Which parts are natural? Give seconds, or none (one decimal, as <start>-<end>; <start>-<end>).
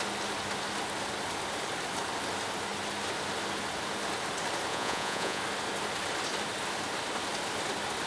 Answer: 0.0-4.7; 5.4-8.1